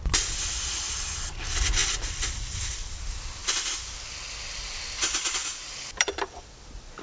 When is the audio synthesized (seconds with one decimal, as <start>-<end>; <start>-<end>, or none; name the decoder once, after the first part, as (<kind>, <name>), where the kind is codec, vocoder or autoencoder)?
1.8-2.6 (vocoder, BigVGAN v2); 5.4-6.6